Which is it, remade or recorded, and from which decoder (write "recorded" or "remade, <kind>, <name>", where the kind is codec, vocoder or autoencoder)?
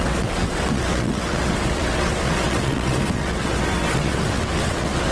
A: remade, vocoder, WaveNeXt